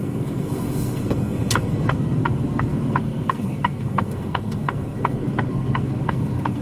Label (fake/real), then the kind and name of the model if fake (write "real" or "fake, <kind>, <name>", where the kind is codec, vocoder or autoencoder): fake, codec, SNAC